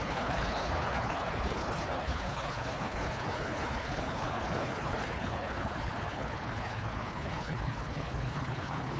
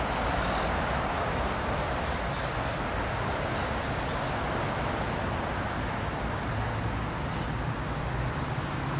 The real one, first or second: second